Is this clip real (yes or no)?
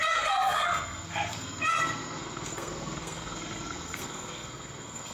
no